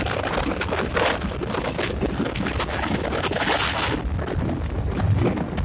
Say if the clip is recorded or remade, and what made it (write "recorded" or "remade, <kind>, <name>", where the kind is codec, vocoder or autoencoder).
recorded